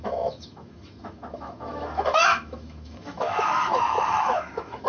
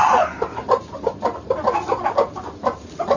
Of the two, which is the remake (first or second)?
first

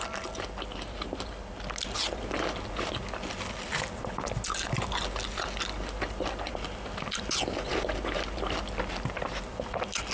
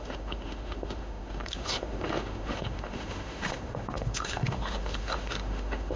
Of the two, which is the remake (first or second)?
second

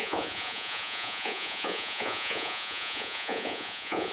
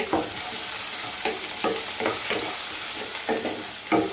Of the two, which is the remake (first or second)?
first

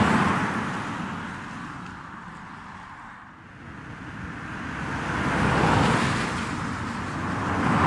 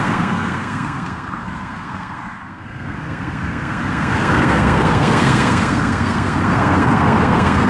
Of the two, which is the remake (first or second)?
second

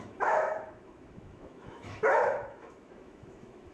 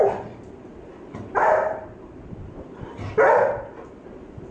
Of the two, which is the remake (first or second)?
first